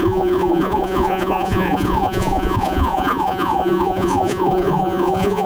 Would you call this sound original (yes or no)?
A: no